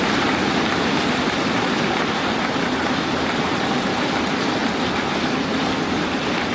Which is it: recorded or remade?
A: recorded